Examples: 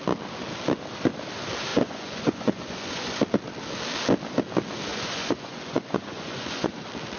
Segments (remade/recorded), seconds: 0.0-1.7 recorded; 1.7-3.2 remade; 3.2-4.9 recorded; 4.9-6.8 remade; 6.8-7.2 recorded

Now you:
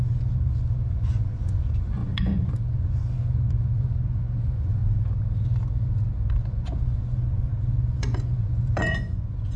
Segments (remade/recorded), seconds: 0.0-4.8 remade; 4.8-6.3 recorded; 6.3-9.6 remade

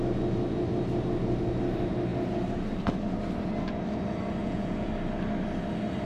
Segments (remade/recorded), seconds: 0.0-4.4 recorded; 4.4-4.9 remade; 4.9-6.1 recorded

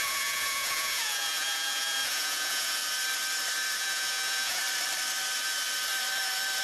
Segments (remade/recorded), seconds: 0.0-2.8 remade; 2.8-3.8 recorded; 3.8-4.6 remade; 4.6-6.6 recorded

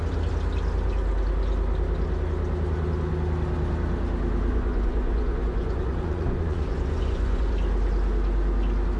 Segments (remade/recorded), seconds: 0.0-4.5 recorded; 4.5-7.5 remade; 7.5-9.0 recorded

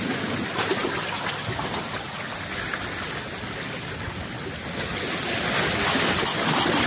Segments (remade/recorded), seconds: 0.0-6.9 recorded

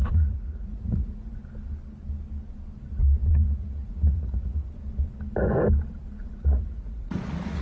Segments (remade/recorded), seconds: 0.0-1.4 remade; 1.4-3.5 recorded; 3.5-4.7 remade; 4.7-6.2 recorded; 6.2-7.6 remade